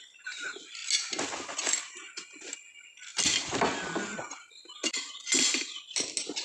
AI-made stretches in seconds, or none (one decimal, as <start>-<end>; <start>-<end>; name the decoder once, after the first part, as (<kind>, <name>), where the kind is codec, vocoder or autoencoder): 3.1-5.1 (vocoder, BigVGAN v2)